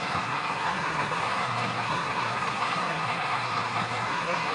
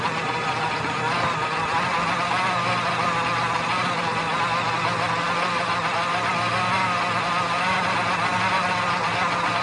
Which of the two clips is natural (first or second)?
second